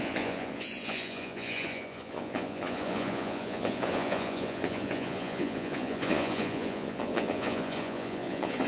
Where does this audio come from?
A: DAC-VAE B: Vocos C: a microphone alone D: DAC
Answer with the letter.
B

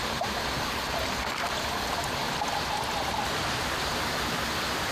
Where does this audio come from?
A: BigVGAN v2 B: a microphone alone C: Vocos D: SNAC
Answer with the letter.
B